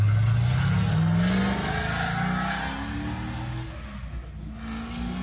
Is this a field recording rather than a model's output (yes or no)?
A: yes